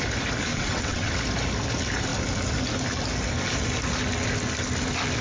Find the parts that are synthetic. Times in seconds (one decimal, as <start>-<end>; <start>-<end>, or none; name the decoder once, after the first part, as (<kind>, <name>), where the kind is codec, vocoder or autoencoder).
0.5-1.1 (vocoder, WaveNeXt)